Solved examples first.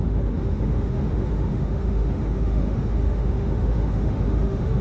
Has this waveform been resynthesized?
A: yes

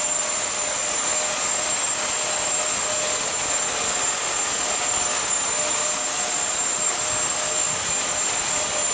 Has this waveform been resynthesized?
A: no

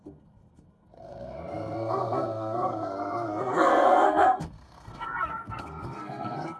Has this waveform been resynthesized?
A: yes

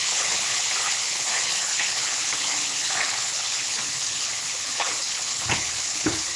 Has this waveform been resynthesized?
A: yes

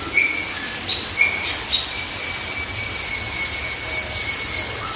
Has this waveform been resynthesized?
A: no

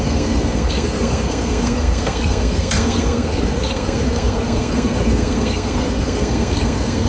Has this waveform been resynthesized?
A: yes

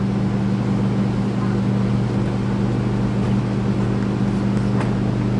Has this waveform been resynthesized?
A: no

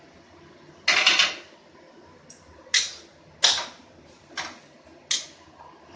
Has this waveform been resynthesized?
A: no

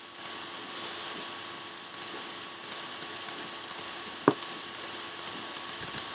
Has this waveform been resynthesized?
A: no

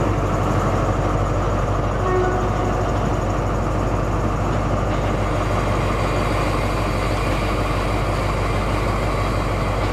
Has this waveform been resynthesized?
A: no